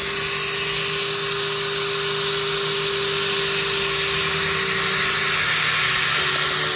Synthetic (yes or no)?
no